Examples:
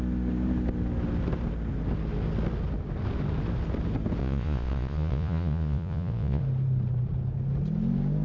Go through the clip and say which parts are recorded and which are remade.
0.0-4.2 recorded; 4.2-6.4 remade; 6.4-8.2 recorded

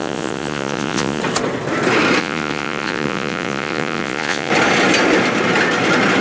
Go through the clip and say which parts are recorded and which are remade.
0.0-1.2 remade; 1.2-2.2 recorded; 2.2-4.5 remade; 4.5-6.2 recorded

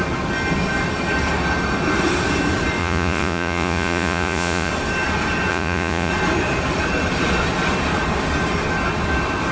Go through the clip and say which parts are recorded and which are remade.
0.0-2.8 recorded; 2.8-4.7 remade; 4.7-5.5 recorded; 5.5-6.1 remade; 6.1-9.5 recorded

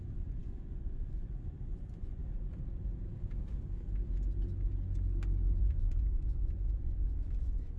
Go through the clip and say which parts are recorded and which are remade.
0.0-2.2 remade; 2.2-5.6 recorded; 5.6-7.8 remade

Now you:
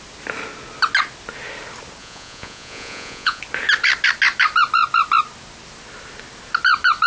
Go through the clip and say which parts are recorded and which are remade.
0.0-2.0 recorded; 2.0-3.4 remade; 3.4-7.1 recorded